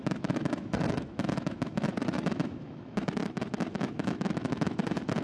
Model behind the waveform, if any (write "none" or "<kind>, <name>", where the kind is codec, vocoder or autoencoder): autoencoder, DAC-VAE